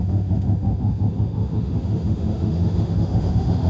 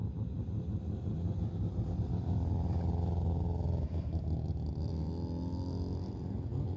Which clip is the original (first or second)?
second